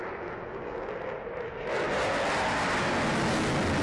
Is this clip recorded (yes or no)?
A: yes